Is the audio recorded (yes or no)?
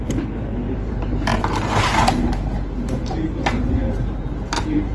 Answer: no